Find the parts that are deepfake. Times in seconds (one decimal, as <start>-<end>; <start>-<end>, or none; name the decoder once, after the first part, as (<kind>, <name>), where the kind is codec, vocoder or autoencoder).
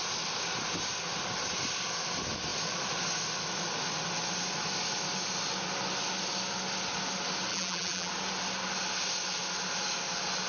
7.5-8.1 (vocoder, BigVGAN v2)